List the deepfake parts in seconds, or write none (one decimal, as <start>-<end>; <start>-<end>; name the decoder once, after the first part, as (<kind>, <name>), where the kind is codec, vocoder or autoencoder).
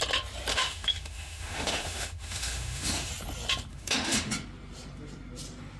0.5-3.1 (autoencoder, DAC-VAE); 3.7-4.3